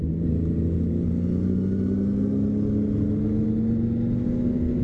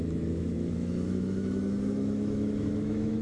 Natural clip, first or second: first